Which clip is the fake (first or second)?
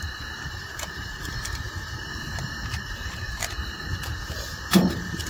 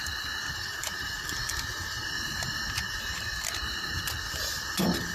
first